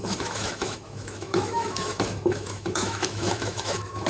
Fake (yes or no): yes